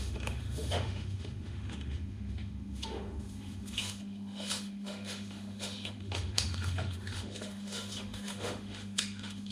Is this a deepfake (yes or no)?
yes